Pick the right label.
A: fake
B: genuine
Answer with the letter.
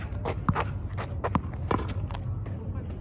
B